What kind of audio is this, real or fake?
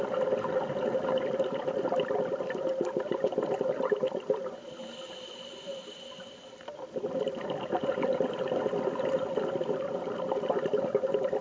real